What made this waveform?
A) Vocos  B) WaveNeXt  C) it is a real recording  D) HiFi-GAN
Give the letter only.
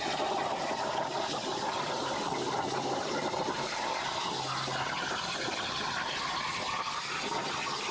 C